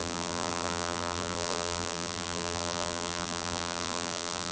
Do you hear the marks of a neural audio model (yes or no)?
yes